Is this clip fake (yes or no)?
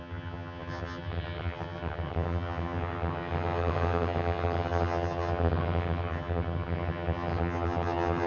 yes